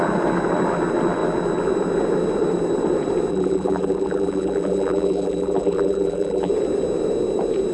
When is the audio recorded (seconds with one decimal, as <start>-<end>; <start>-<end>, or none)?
0.0-3.3; 6.5-7.7